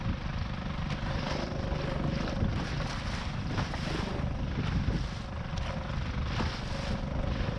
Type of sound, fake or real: real